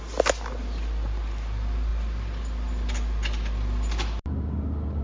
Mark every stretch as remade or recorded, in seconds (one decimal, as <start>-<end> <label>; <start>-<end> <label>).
0.0-5.0 recorded